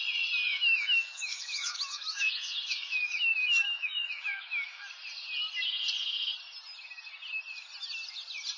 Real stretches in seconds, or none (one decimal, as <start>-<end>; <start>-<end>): 0.0-0.5; 4.9-8.6

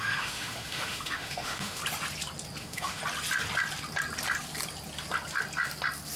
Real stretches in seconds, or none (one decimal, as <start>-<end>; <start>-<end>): 1.8-2.6; 3.0-6.2